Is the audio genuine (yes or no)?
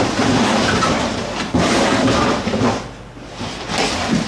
yes